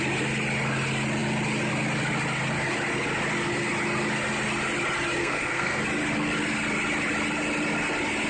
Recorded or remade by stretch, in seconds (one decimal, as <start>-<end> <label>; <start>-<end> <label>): 0.0-5.2 recorded; 5.2-5.8 remade; 5.8-8.3 recorded